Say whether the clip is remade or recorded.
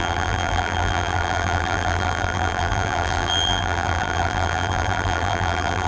remade